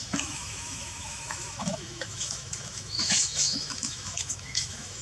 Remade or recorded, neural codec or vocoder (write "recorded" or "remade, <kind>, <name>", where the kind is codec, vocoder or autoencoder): remade, autoencoder, DAC-VAE